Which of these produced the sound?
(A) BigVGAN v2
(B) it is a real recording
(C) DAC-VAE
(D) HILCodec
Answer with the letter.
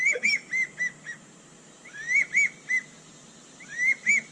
B